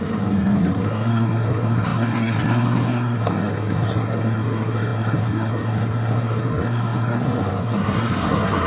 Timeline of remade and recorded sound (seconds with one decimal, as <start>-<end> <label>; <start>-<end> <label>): 0.0-8.7 remade